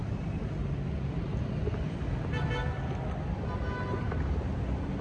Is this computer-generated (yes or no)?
no